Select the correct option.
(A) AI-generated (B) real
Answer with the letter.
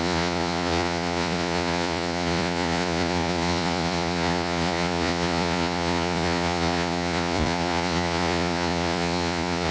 A